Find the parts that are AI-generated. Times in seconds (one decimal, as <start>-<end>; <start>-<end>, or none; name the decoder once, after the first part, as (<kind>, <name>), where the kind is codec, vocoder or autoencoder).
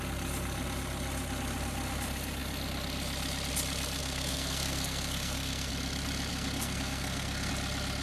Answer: 4.0-5.7 (codec, SNAC); 6.3-7.5